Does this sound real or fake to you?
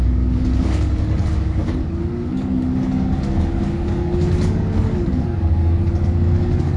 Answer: fake